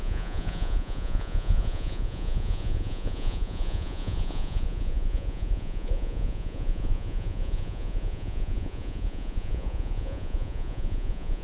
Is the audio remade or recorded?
remade